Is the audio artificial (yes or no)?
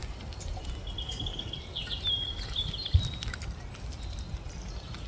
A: no